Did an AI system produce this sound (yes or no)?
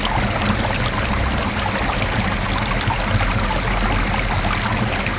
no